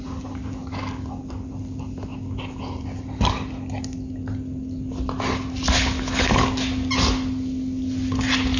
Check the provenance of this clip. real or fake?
real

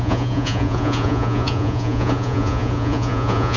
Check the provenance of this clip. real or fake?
fake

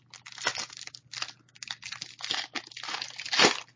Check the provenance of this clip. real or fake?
real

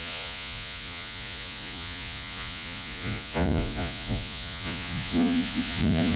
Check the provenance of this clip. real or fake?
fake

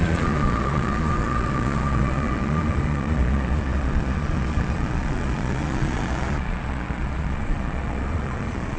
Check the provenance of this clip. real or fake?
fake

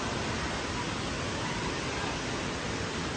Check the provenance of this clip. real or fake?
real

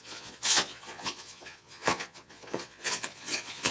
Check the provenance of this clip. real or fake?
fake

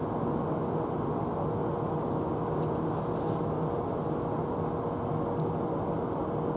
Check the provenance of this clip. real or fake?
real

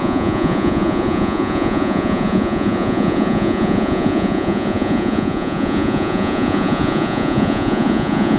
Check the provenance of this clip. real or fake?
fake